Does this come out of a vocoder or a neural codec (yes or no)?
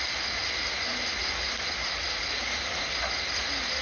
no